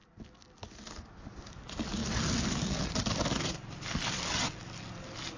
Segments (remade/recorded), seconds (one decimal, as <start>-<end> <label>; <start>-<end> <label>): 0.0-5.4 recorded